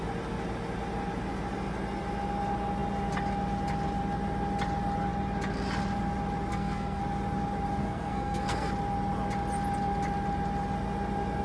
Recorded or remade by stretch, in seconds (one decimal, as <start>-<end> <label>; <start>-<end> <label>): 0.0-6.5 recorded; 6.5-7.0 remade; 7.0-7.8 recorded; 7.8-8.7 remade; 8.7-11.4 recorded